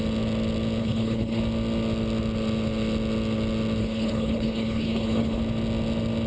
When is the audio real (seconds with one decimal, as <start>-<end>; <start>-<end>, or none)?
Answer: 0.0-0.8; 1.4-3.8; 5.4-6.3